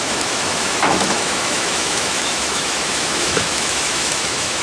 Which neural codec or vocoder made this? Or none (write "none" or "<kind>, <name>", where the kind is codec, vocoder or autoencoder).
autoencoder, DAC-VAE